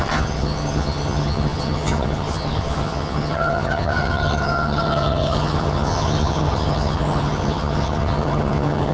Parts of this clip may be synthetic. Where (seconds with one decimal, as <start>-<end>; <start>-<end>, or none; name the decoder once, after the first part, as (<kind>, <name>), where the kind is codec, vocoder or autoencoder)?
0.0-8.9 (vocoder, HiFi-GAN)